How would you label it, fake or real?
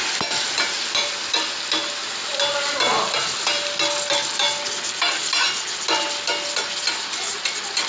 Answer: real